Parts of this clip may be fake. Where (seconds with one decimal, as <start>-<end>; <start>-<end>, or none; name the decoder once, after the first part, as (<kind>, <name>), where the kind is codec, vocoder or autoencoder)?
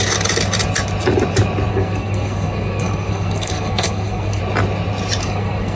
1.7-4.4 (codec, SNAC); 5.2-5.8